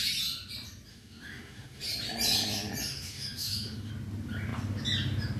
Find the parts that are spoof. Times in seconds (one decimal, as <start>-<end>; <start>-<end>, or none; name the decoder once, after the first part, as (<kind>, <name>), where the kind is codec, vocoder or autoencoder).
0.9-1.8 (autoencoder, DAC-VAE); 2.9-3.9